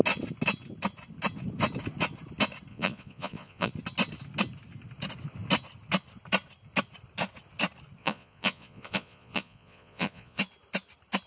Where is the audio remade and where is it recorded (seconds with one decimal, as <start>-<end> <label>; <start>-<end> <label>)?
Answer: 0.0-2.7 recorded; 2.7-3.7 remade; 3.7-8.0 recorded; 8.0-10.4 remade; 10.4-11.3 recorded